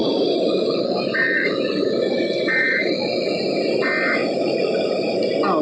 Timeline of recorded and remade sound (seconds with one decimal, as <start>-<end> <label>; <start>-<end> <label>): 0.0-3.4 remade; 3.4-4.2 recorded; 4.2-4.8 remade; 4.8-5.6 recorded